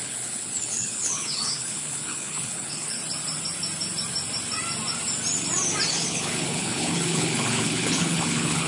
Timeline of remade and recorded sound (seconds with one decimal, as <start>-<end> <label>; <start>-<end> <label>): 0.0-3.0 remade; 3.0-5.9 recorded; 5.9-8.7 remade